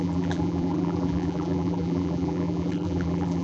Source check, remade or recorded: remade